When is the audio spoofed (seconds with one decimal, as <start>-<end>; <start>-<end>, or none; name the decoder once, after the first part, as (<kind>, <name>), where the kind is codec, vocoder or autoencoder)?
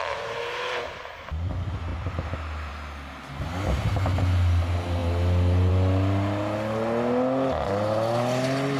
none